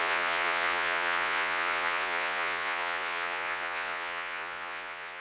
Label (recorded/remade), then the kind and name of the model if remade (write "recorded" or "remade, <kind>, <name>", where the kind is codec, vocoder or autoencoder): remade, vocoder, Vocos